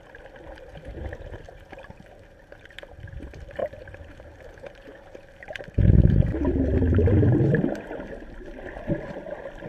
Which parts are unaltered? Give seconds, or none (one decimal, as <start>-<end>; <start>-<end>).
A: 0.0-0.7; 3.1-3.6; 8.1-9.7